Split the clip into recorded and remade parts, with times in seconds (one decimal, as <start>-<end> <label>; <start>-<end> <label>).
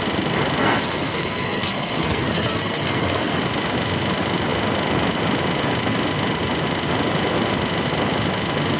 0.0-0.6 recorded; 0.6-3.4 remade; 3.4-8.8 recorded